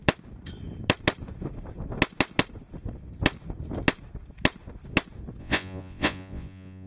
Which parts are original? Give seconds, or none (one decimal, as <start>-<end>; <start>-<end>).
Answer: 0.0-5.4